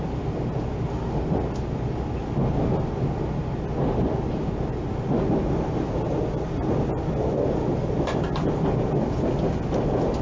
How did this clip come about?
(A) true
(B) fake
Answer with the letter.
A